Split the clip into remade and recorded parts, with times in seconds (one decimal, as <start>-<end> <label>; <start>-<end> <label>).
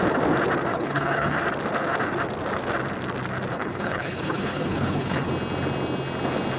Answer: 0.0-0.7 recorded; 0.7-1.4 remade; 1.4-3.5 recorded; 3.5-5.3 remade; 5.3-6.6 recorded